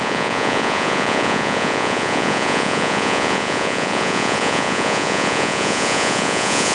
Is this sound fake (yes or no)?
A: yes